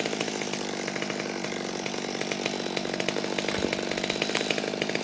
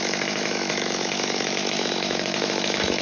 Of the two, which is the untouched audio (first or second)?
first